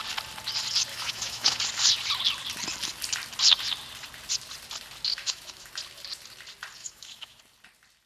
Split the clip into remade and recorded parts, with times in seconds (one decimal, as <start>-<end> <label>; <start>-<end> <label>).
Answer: 0.0-0.9 recorded; 0.9-1.6 remade; 1.6-5.1 recorded; 5.1-5.7 remade; 5.7-6.8 recorded; 6.8-7.4 remade; 7.4-8.1 recorded

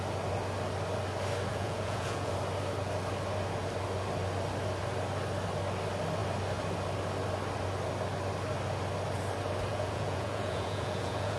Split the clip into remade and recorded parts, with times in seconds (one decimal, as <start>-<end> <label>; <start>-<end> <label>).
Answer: 0.0-1.5 recorded; 1.5-2.3 remade; 2.3-9.7 recorded; 9.7-11.4 remade

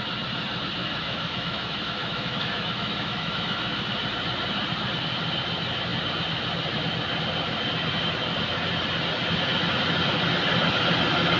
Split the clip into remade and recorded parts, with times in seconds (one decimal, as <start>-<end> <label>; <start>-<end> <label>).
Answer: 0.0-0.8 recorded; 0.8-3.8 remade; 3.8-11.4 recorded

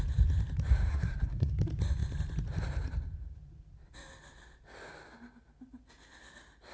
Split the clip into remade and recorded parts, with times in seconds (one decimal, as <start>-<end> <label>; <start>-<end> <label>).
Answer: 0.0-0.9 recorded; 0.9-1.5 remade; 1.5-6.7 recorded

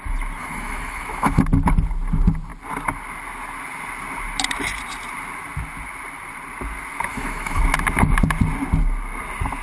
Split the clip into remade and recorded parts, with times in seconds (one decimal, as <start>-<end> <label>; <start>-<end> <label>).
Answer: 0.0-0.4 recorded; 0.4-1.4 remade; 1.4-7.1 recorded; 7.1-7.6 remade; 7.6-9.6 recorded

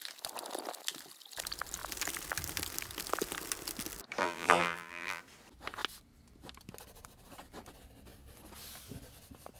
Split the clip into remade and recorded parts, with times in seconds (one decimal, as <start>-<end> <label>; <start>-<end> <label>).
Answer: 0.0-4.2 recorded; 4.2-5.2 remade; 5.2-9.6 recorded

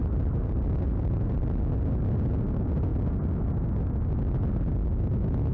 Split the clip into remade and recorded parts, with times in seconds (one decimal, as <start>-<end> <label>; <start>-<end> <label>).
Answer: 0.0-1.4 remade; 1.4-5.5 recorded